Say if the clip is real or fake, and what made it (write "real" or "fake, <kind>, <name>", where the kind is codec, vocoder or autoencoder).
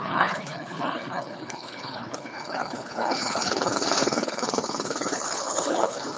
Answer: fake, codec, HILCodec